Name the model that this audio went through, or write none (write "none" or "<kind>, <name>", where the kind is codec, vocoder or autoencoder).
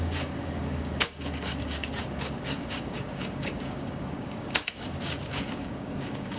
codec, DAC